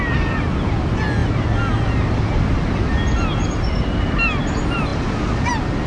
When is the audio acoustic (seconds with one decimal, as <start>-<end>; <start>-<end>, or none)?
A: 0.0-5.9